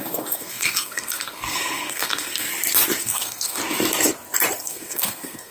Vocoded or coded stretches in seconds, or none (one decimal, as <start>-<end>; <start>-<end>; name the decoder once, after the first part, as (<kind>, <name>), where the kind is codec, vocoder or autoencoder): 0.0-2.5 (codec, SNAC); 3.0-3.6; 4.6-5.5